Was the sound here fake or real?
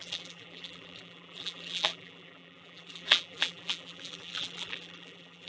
fake